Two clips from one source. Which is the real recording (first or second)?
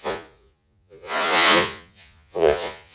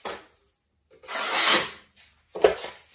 second